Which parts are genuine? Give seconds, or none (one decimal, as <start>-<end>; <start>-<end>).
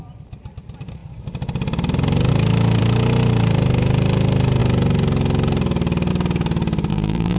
0.0-6.9